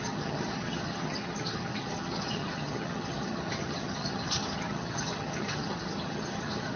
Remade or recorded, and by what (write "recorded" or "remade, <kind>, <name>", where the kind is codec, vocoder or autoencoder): remade, vocoder, HiFi-GAN